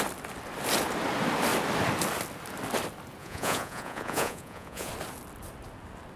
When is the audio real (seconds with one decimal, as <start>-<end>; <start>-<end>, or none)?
0.0-3.2; 4.9-6.2